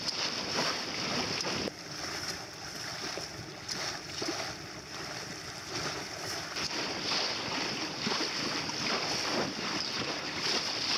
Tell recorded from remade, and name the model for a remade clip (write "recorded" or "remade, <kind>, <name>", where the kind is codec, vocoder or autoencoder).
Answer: remade, vocoder, BigVGAN v2